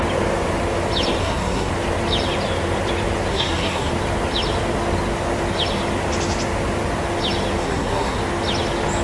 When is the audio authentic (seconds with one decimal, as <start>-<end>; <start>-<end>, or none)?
0.0-1.2; 1.7-3.3; 3.9-7.6; 8.2-9.0